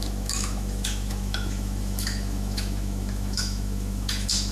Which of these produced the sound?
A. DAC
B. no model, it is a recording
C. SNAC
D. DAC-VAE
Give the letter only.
D